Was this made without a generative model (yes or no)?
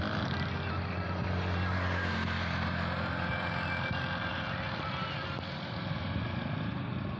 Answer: yes